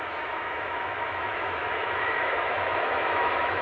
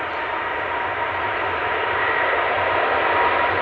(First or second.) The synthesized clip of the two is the first